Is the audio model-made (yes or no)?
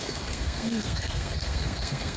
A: yes